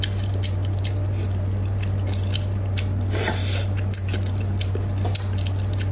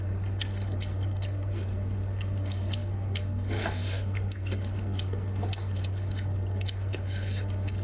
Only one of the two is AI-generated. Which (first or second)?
second